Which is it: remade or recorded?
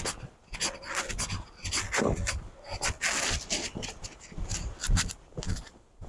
recorded